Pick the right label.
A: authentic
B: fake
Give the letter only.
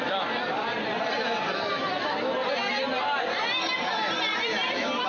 A